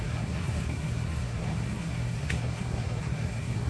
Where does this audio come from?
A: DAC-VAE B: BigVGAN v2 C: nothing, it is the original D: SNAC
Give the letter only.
D